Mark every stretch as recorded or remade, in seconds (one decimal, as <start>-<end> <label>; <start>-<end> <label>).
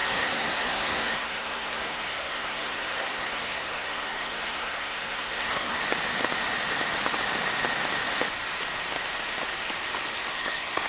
0.0-5.8 remade; 5.8-10.3 recorded; 10.3-10.9 remade